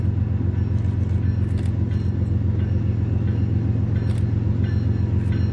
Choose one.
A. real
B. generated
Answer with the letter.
A